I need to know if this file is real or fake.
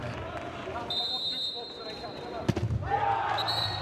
real